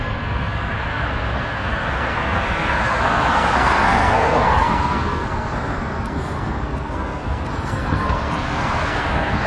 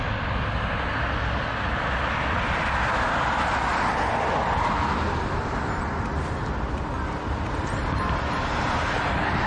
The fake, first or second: first